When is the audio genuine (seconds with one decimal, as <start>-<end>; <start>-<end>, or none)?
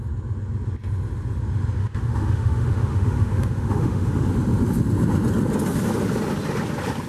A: 0.0-1.8; 4.3-7.1